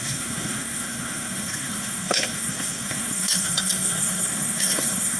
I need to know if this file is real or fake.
fake